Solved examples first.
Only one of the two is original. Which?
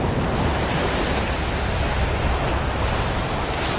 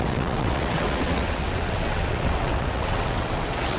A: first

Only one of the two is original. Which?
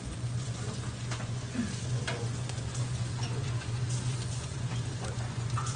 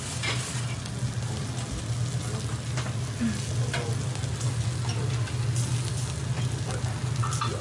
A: second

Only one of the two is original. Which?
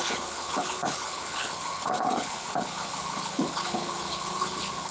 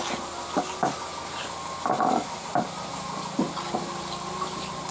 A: second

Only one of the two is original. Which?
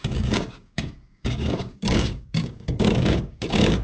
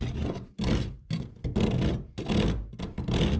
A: second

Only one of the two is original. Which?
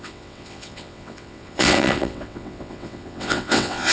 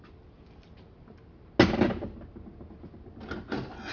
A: second